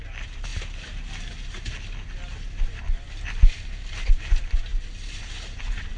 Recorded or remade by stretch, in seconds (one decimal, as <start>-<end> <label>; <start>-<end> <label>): 0.0-6.0 recorded